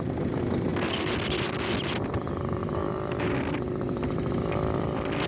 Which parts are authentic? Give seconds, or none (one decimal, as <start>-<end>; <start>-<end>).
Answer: 0.0-2.6; 3.3-5.3